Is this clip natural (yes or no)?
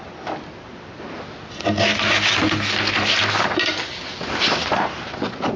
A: yes